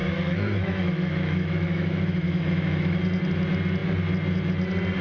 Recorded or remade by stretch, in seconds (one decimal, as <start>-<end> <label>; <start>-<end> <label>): 0.0-3.0 remade; 3.0-5.0 recorded